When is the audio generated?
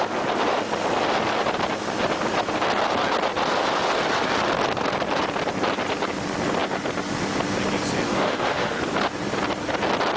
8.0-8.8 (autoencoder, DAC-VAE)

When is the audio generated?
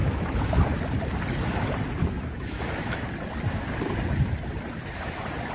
0.0-0.6 (autoencoder, DAC-VAE); 2.0-3.1